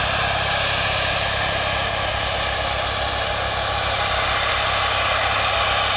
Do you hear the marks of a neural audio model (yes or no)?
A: no